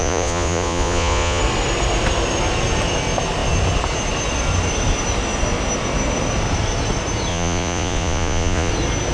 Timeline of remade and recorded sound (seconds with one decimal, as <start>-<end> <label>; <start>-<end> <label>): 0.0-1.4 remade; 1.4-7.3 recorded; 7.3-8.7 remade; 8.7-9.1 recorded